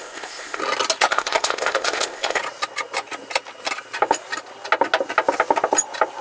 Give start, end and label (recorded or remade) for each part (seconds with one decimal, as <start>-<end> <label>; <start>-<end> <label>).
0.0-0.6 remade; 0.6-1.1 recorded; 1.1-2.4 remade; 2.4-6.2 recorded